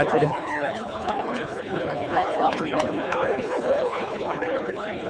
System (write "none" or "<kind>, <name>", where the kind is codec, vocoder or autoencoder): codec, HILCodec